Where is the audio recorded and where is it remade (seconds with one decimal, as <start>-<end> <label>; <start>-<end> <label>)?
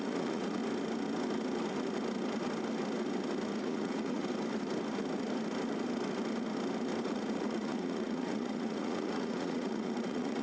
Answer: 0.0-0.6 remade; 0.6-3.6 recorded; 3.6-4.2 remade; 4.2-7.0 recorded; 7.0-10.4 remade